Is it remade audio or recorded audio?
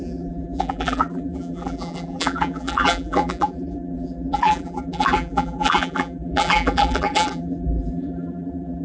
remade